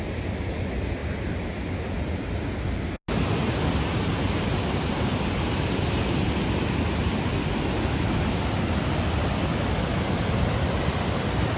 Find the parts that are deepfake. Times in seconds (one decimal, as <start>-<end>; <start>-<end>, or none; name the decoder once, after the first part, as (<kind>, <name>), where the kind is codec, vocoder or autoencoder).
none